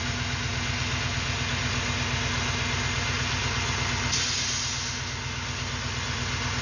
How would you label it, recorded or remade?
recorded